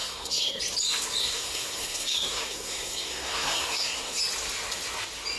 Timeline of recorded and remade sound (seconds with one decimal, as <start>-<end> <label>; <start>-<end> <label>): 0.0-0.6 remade; 0.6-1.2 recorded; 1.2-4.2 remade; 4.2-5.4 recorded